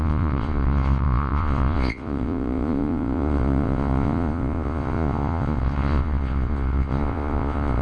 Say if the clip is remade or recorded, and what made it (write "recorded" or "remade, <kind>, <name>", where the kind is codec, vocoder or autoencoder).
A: remade, vocoder, Vocos